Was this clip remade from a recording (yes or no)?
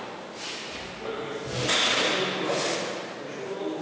no